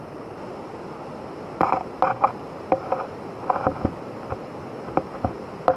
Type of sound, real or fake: real